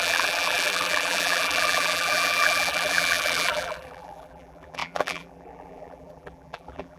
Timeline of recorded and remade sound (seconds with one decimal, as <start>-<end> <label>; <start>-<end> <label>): 0.0-7.0 remade